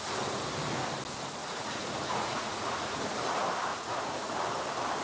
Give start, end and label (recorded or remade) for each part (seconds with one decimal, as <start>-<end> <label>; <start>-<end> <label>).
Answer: 0.0-1.4 recorded; 1.4-3.1 remade; 3.1-3.7 recorded; 3.7-4.4 remade; 4.4-5.0 recorded